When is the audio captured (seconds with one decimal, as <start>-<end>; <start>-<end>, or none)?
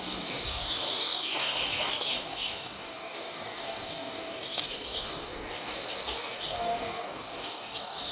none